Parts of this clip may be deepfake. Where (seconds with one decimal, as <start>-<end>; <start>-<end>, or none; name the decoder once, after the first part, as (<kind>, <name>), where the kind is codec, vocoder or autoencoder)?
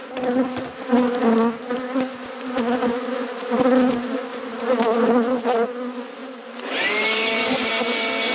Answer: 4.3-4.8 (vocoder, BigVGAN v2); 6.2-7.7